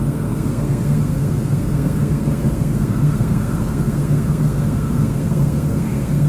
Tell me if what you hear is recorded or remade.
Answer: remade